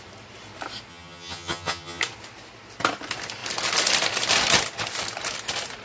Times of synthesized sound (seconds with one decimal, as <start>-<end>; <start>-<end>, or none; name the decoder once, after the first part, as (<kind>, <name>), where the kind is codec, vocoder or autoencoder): 0.9-2.0 (vocoder, HiFi-GAN)